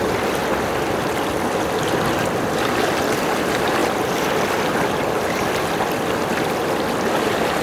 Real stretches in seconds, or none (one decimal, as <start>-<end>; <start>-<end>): 0.0-7.6